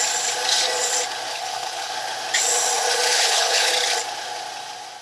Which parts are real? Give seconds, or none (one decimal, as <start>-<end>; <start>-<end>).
0.0-1.3; 1.9-3.1; 3.7-5.0